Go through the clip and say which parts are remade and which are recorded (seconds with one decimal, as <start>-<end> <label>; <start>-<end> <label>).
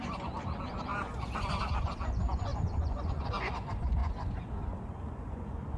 0.0-5.8 remade